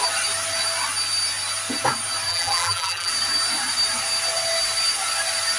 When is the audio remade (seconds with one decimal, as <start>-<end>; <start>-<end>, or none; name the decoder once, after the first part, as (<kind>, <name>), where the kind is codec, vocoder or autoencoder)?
2.3-3.1 (vocoder, BigVGAN v2)

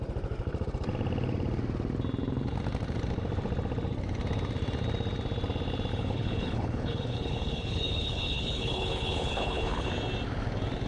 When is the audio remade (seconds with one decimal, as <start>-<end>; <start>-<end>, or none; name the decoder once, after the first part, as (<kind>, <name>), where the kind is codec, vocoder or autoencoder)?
5.9-9.9 (codec, HILCodec)

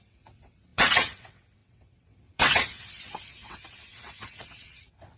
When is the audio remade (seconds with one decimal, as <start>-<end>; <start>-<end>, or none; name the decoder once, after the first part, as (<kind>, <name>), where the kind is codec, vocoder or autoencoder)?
0.0-5.2 (vocoder, WaveNeXt)